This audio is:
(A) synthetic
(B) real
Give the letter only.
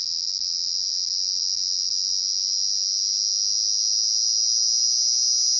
B